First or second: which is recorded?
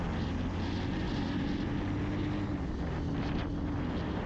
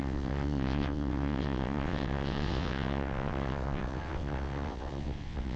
first